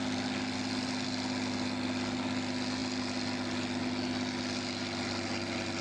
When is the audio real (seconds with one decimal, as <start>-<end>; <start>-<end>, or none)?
0.0-5.8